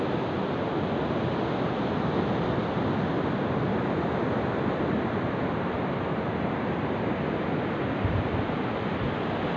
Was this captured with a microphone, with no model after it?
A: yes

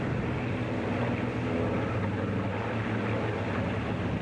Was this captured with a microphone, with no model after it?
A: yes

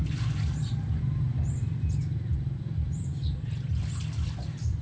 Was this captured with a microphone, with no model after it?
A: yes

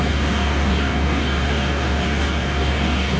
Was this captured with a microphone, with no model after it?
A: no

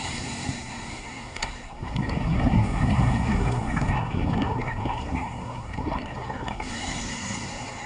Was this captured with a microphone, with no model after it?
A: no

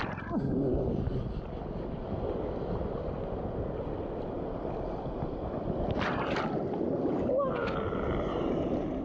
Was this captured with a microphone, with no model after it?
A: yes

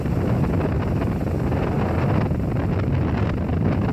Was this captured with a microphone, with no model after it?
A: yes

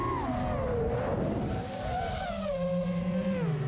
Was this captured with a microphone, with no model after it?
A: yes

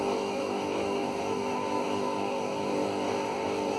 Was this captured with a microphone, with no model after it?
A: no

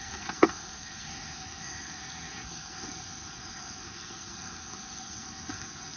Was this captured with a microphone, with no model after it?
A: no